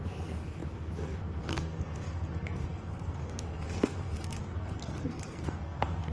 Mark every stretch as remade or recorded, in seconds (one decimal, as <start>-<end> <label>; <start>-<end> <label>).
0.0-6.1 remade